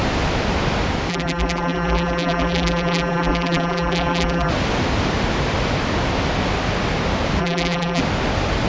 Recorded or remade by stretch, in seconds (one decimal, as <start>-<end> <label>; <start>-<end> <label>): 0.0-1.1 recorded; 1.1-4.5 remade; 4.5-7.4 recorded; 7.4-8.0 remade; 8.0-8.7 recorded

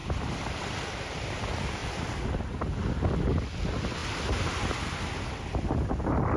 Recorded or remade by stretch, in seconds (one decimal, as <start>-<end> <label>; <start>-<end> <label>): 0.0-1.3 remade; 1.3-1.8 recorded; 1.8-2.4 remade; 2.4-6.4 recorded

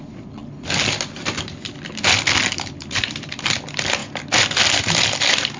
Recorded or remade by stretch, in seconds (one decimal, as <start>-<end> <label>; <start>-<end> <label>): 0.0-0.4 remade; 0.4-2.7 recorded; 2.7-4.0 remade; 4.0-4.6 recorded; 4.6-5.6 remade

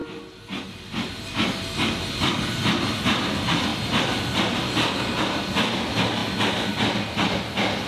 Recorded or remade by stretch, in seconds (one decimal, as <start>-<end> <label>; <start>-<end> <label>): 0.0-3.7 recorded; 3.7-5.2 remade; 5.2-7.9 recorded